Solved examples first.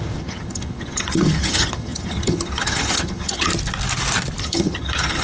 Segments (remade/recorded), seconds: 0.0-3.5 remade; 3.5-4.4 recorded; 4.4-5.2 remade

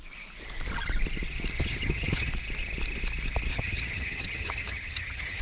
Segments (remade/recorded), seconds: 0.0-1.6 recorded; 1.6-2.3 remade; 2.3-3.5 recorded; 3.5-5.4 remade

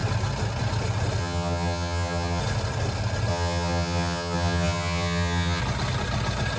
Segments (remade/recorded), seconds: 0.0-1.2 recorded; 1.2-2.4 remade; 2.4-3.3 recorded; 3.3-5.6 remade; 5.6-6.6 recorded